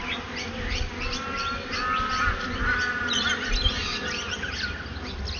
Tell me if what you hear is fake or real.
real